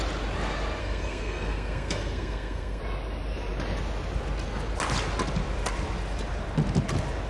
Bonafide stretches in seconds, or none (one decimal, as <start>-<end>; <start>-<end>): 0.0-0.8; 2.8-7.3